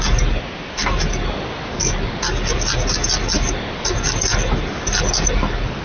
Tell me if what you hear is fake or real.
real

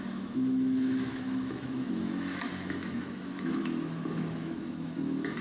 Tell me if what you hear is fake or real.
fake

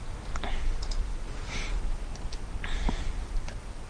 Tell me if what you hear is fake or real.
real